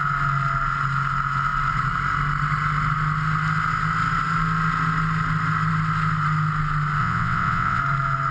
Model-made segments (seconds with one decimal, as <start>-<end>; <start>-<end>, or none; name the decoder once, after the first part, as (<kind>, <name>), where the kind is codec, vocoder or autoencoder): 7.0-7.8 (vocoder, WaveNeXt)